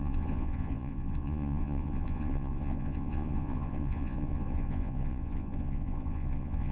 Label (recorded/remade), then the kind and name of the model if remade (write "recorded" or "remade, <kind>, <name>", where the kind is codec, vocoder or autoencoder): remade, vocoder, Vocos